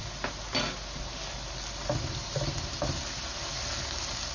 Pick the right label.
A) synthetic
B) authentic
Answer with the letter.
B